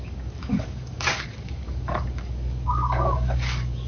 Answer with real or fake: fake